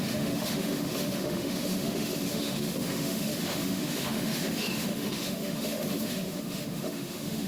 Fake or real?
fake